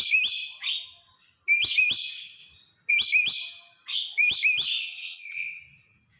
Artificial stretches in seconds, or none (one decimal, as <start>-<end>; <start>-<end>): 4.8-5.6